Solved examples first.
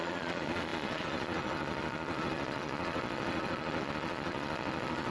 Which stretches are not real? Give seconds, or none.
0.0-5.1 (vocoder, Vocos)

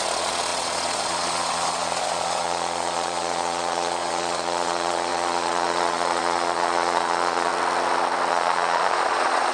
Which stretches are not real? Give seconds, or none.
0.0-7.5 (vocoder, Vocos); 8.3-9.5

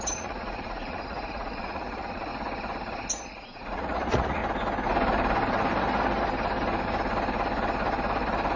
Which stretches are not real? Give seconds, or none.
0.0-2.3 (vocoder, Vocos); 3.1-4.4

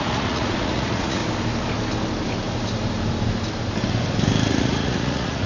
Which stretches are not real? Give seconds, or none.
0.0-1.2 (vocoder, Vocos); 4.5-5.5

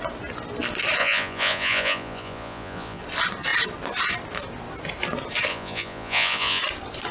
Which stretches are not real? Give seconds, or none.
1.0-3.0 (vocoder, Vocos); 5.5-6.6